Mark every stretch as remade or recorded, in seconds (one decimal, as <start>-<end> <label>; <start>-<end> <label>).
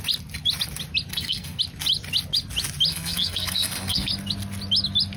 0.0-1.1 recorded; 1.1-1.6 remade; 1.6-2.9 recorded; 2.9-4.1 remade; 4.1-5.2 recorded